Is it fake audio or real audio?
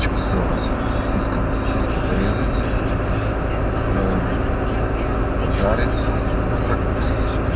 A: real